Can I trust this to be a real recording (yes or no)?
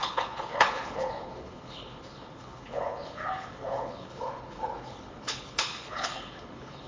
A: no